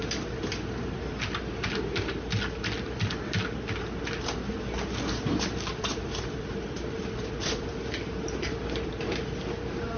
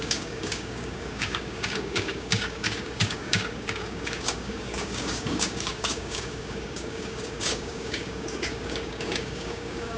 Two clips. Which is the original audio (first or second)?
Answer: first